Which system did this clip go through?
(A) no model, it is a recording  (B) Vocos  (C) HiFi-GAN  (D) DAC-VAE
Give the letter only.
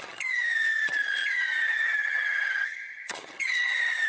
C